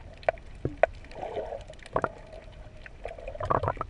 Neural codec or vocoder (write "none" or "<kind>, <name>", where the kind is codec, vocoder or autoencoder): none